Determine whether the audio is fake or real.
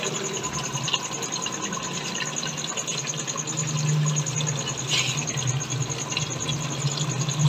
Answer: real